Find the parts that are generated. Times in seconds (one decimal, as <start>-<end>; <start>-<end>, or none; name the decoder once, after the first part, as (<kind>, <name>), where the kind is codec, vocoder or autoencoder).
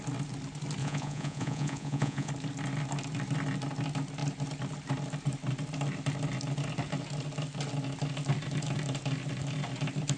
0.8-2.3 (vocoder, Vocos)